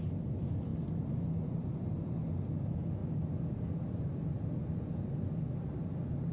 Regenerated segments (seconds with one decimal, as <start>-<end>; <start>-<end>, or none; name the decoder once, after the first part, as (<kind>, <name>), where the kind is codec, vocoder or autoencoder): 0.7-1.2 (vocoder, BigVGAN v2); 3.0-6.3

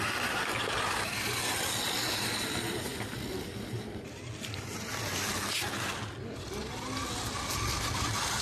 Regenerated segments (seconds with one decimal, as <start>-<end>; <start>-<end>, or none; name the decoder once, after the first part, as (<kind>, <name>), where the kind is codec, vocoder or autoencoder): none

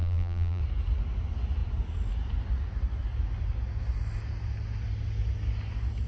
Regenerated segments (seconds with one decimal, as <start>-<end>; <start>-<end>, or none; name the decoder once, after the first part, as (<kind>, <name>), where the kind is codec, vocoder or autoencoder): 0.0-0.6 (vocoder, BigVGAN v2)

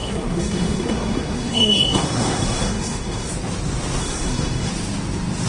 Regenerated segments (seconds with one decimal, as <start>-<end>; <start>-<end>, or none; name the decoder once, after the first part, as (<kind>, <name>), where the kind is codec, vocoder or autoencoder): 0.0-3.3 (codec, SNAC); 4.0-4.7

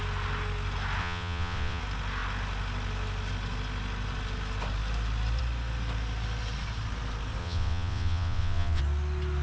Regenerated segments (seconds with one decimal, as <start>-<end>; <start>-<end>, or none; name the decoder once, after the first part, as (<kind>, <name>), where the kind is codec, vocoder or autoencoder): 1.0-1.8 (vocoder, WaveNeXt); 7.4-8.8

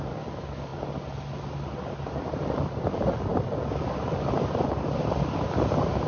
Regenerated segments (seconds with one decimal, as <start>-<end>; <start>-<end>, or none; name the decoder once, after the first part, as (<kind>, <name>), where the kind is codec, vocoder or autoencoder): 0.0-0.7 (vocoder, BigVGAN v2); 2.0-6.1

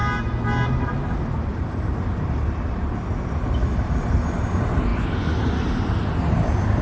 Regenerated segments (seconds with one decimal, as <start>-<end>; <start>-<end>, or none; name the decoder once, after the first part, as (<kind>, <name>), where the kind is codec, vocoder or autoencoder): none

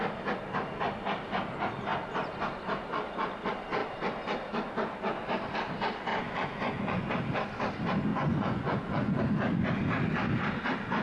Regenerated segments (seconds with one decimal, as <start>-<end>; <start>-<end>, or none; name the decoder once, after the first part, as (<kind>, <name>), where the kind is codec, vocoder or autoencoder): 6.1-7.1 (vocoder, Vocos); 8.1-9.2